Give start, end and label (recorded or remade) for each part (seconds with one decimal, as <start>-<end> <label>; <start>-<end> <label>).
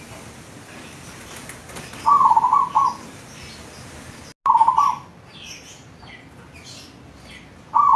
0.0-8.0 recorded